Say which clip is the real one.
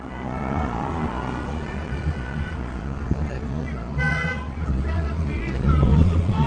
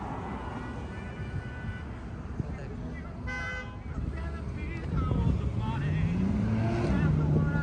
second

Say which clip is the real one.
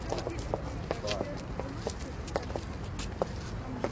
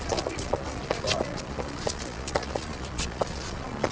first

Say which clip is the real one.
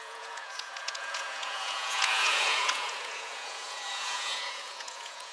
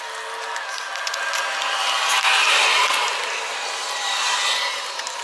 second